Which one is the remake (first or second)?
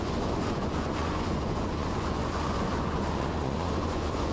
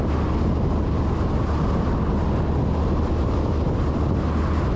first